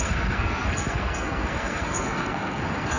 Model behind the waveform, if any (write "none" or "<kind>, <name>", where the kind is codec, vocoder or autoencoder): codec, SNAC